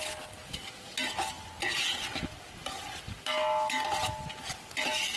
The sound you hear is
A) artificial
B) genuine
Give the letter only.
B